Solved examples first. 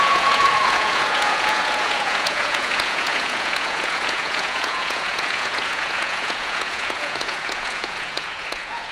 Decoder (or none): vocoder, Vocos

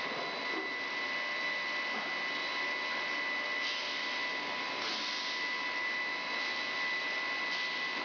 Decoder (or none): none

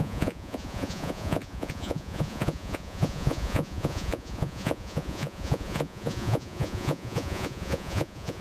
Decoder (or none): vocoder, Vocos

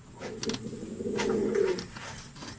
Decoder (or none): none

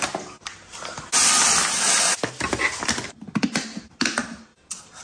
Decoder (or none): none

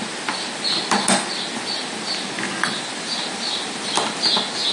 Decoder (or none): none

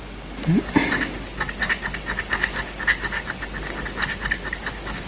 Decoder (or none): none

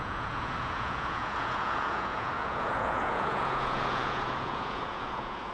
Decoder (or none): vocoder, Vocos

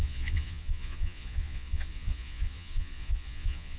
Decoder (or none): vocoder, Vocos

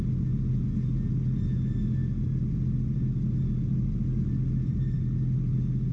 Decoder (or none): none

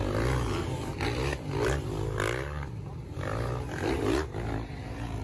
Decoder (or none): none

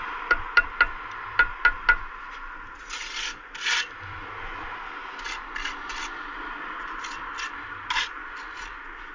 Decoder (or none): none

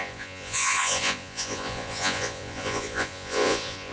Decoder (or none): vocoder, Vocos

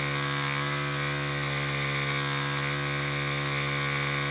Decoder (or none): none